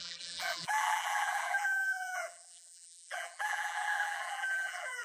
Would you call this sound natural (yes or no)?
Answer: no